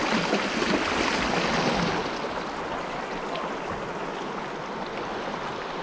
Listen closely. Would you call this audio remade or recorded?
recorded